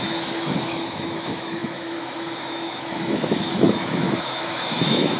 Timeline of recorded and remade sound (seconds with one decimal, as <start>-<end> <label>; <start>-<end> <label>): 0.0-5.2 remade

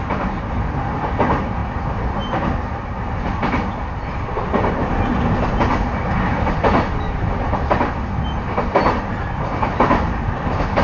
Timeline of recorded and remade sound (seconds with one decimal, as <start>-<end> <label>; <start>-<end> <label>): 0.0-10.8 recorded

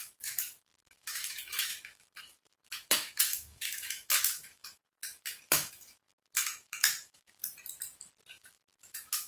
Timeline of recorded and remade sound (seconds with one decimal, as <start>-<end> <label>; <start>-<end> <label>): 0.0-7.4 remade; 7.4-8.3 recorded; 8.3-9.3 remade

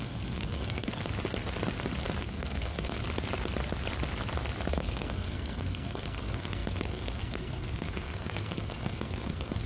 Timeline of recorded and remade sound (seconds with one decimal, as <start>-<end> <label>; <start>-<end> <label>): 0.0-1.0 remade; 1.0-2.2 recorded; 2.2-3.0 remade; 3.0-4.7 recorded; 4.7-9.7 remade